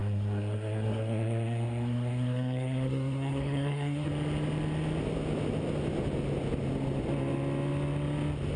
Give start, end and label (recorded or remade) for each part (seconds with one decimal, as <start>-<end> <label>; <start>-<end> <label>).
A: 0.0-4.1 remade; 4.1-8.6 recorded